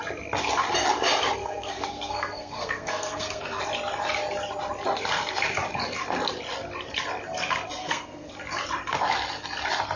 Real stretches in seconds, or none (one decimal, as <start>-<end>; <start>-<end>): 0.0-1.4; 3.6-7.8; 8.3-10.0